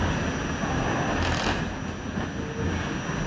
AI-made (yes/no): no